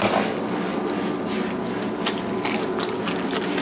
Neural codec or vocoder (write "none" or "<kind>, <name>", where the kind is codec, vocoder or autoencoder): none